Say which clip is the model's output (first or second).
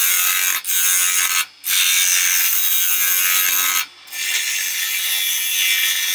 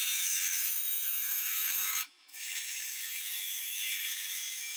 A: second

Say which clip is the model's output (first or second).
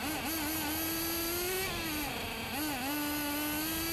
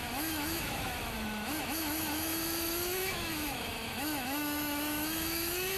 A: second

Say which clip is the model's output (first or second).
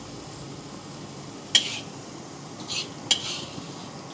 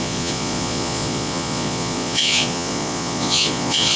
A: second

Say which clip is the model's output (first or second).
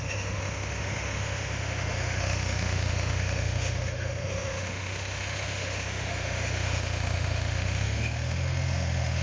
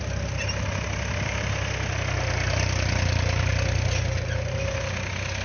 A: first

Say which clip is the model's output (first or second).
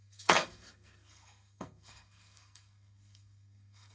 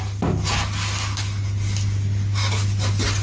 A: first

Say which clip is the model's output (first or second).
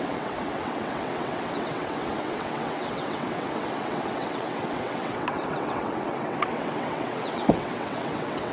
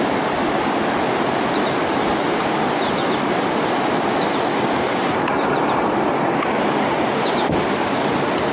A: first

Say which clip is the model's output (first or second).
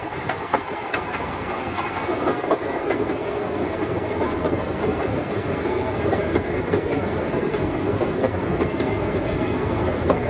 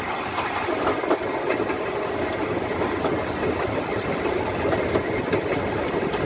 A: first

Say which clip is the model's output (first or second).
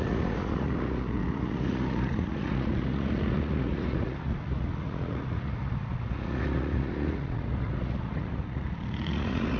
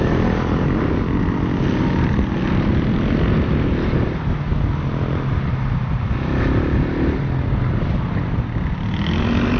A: first